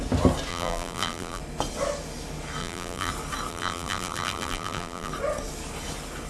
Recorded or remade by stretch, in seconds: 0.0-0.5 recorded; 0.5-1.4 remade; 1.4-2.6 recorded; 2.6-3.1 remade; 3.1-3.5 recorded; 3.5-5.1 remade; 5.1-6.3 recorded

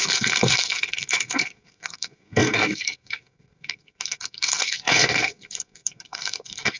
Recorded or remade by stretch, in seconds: 0.0-6.8 remade